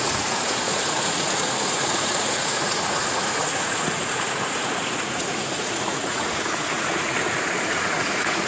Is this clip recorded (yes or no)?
no